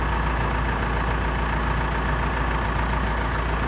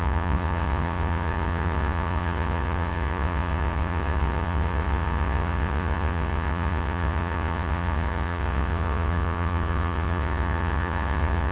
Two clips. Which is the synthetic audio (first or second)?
second